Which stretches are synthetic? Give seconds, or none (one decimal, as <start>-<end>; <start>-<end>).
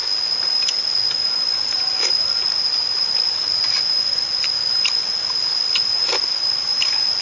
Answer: none